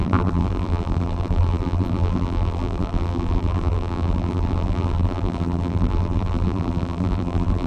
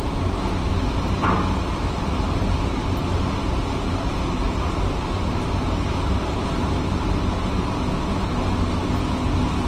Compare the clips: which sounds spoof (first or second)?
first